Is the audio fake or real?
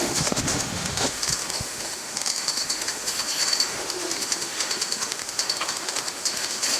fake